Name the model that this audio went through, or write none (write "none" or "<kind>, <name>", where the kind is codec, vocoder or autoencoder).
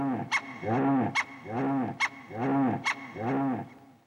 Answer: none